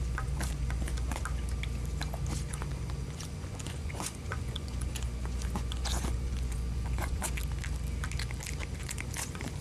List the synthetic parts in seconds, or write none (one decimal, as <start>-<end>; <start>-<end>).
0.0-1.2; 2.5-7.4; 8.8-9.6